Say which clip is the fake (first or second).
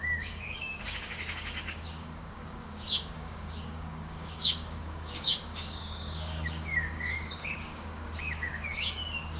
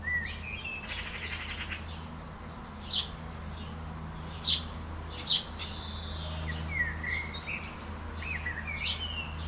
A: first